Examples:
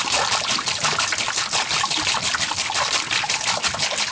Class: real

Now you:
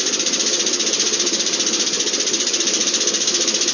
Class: real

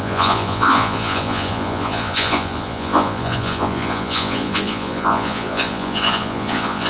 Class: fake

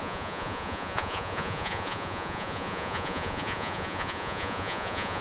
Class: fake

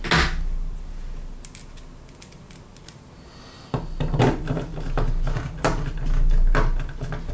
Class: real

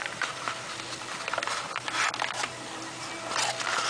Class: real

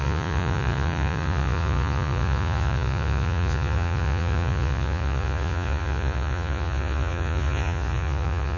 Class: fake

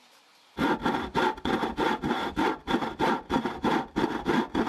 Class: real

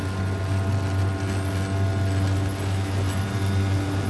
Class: real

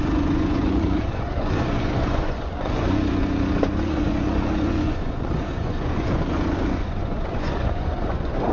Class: fake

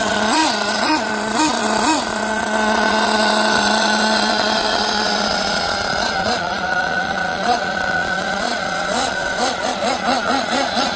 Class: fake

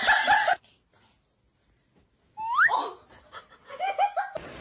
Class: real